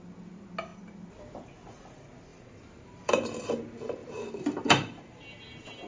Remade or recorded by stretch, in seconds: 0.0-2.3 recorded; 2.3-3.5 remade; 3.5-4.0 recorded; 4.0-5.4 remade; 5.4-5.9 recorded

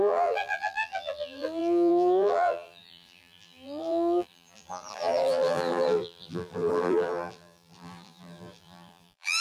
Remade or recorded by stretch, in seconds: 0.0-9.4 remade